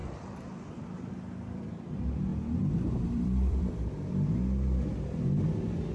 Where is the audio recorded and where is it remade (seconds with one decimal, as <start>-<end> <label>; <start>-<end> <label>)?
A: 0.0-1.1 remade; 1.1-2.3 recorded; 2.3-3.7 remade; 3.7-5.9 recorded